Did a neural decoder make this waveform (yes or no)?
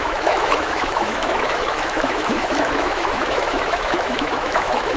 yes